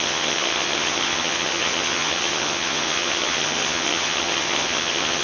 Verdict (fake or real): fake